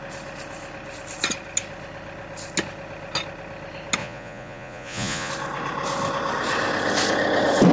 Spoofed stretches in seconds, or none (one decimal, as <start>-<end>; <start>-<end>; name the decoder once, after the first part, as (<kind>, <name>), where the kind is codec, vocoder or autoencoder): 4.0-5.3 (vocoder, Vocos)